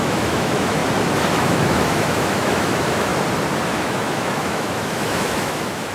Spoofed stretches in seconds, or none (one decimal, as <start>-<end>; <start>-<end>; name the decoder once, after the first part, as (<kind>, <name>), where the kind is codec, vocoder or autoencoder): 0.0-0.8 (autoencoder, DAC-VAE); 1.3-3.1; 3.7-5.9